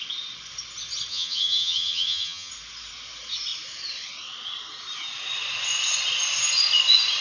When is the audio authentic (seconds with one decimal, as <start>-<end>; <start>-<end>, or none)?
0.0-1.1; 2.5-7.2